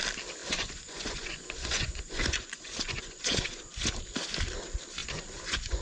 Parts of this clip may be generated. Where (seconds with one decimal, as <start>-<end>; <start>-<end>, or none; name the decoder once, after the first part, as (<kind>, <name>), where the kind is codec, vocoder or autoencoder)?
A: 0.4-3.9 (vocoder, Vocos); 5.0-5.8